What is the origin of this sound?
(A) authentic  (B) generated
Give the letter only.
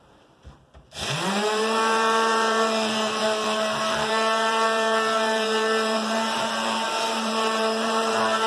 B